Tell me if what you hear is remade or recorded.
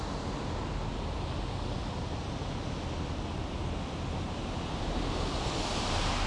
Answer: recorded